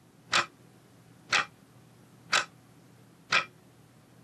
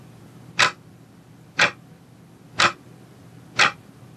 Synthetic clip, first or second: second